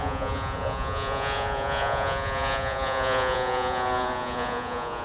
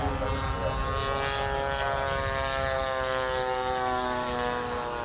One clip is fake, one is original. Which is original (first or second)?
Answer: second